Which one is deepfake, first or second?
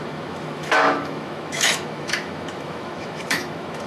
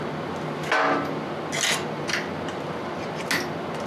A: first